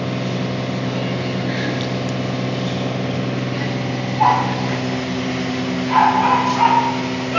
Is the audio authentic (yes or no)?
yes